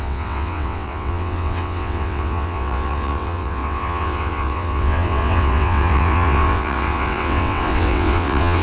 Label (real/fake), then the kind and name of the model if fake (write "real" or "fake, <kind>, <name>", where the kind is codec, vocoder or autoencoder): fake, vocoder, WaveNeXt